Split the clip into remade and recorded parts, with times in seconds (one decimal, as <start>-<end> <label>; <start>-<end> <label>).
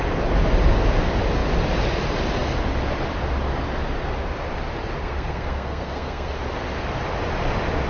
0.0-5.0 recorded; 5.0-6.3 remade; 6.3-7.9 recorded